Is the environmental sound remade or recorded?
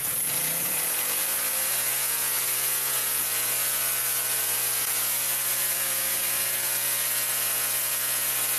remade